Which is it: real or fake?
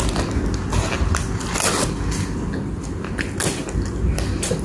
real